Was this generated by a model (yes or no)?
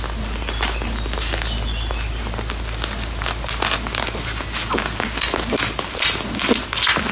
no